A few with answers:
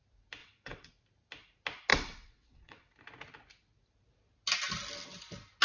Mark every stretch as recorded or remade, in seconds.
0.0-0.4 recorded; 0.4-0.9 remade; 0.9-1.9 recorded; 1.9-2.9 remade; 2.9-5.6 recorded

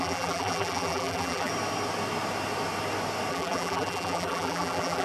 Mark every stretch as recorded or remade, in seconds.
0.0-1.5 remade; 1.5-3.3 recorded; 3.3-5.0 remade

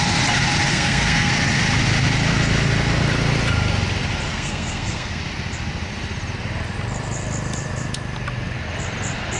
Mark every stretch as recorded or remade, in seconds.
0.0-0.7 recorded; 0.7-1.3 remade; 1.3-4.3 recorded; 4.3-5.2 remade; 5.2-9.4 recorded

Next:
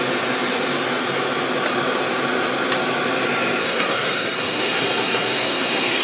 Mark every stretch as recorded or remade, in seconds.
0.0-3.6 recorded; 3.6-6.0 remade

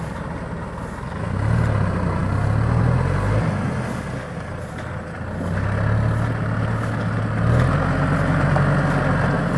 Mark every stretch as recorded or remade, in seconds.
0.0-9.6 recorded

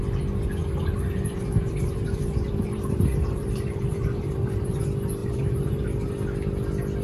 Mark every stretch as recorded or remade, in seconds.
0.0-0.6 recorded; 0.6-4.8 remade; 4.8-5.2 recorded; 5.2-6.1 remade; 6.1-7.0 recorded